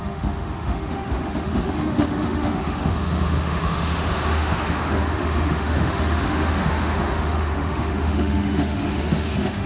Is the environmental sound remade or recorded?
remade